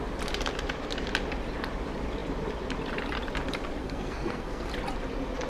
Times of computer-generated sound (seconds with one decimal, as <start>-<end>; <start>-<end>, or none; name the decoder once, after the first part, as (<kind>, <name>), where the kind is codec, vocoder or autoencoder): 3.8-4.7 (codec, SNAC)